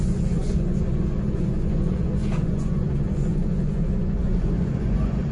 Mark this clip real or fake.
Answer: fake